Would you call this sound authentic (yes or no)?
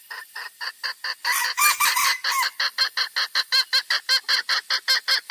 yes